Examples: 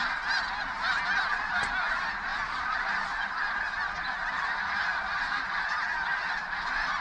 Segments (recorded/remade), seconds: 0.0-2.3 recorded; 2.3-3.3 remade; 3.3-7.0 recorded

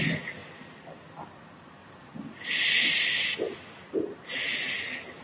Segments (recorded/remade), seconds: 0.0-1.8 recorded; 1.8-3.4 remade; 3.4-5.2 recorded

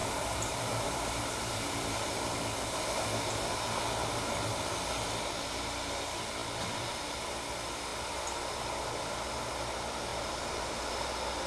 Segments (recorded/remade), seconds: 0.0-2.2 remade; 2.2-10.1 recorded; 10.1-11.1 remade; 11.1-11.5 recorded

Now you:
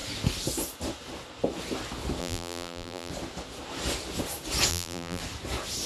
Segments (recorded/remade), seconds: 0.0-2.2 recorded; 2.2-3.1 remade; 3.1-4.7 recorded; 4.7-5.2 remade; 5.2-5.9 recorded

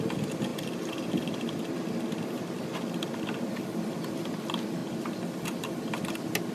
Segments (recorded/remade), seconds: 0.0-6.5 recorded